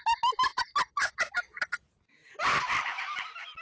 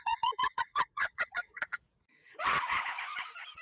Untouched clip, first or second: first